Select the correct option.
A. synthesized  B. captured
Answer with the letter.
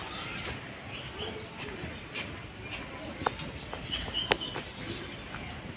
B